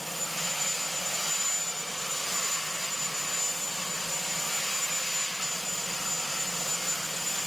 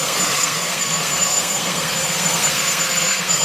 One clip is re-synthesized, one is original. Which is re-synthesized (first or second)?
second